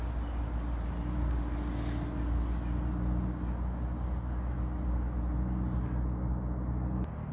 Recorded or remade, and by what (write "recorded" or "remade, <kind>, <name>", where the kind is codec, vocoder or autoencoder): recorded